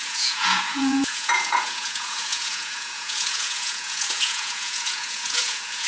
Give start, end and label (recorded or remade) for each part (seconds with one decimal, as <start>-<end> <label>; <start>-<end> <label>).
0.0-5.9 remade